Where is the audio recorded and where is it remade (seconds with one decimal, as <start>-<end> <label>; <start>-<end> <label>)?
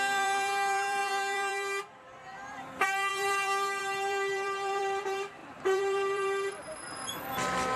0.0-7.8 remade